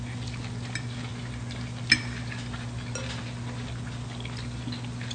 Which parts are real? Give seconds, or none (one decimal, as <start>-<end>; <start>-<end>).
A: 0.0-5.1